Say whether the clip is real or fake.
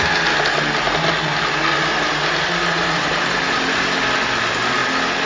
real